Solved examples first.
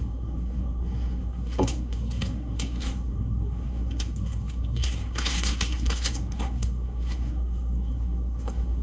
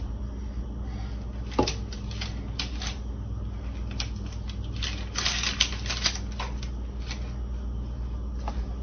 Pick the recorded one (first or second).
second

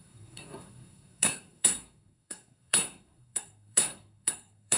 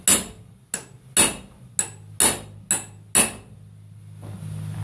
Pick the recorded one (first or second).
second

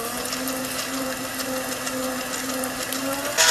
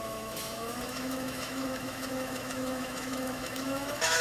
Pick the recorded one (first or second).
first